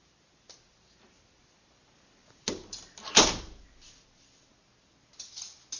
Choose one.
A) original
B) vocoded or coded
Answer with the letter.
A